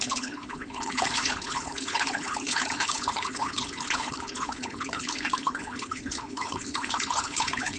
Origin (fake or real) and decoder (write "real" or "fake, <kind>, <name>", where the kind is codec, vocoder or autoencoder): fake, codec, HILCodec